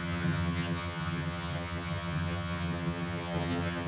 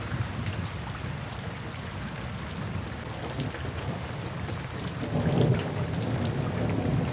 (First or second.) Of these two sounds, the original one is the second